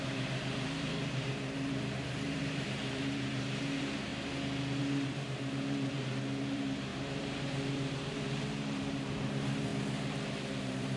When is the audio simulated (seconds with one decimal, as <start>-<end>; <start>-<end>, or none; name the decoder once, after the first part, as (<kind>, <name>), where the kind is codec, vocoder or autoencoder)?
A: 0.0-4.1 (vocoder, BigVGAN v2); 4.8-9.7; 10.6-11.0